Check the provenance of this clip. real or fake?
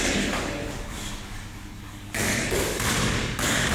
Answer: fake